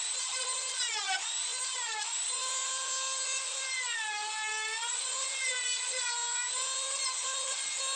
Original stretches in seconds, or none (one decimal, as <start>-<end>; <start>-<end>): 0.0-8.0